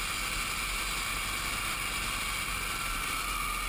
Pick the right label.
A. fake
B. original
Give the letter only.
B